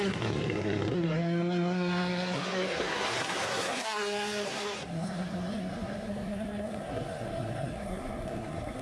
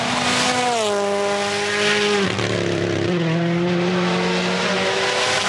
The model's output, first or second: first